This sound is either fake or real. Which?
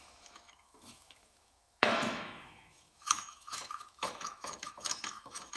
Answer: fake